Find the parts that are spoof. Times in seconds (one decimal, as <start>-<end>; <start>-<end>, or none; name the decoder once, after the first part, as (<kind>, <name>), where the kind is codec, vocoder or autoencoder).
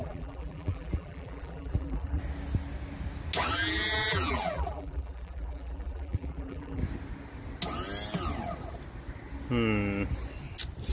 0.0-2.2 (vocoder, BigVGAN v2); 3.5-6.8